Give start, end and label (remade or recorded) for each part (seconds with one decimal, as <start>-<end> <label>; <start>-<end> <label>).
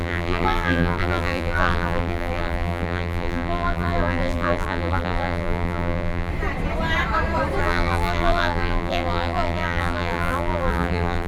0.0-6.3 remade; 6.3-7.6 recorded; 7.6-11.3 remade